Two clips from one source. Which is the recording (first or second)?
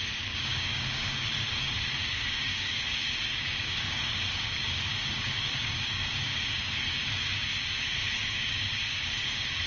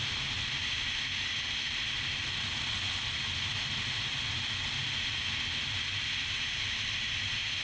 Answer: second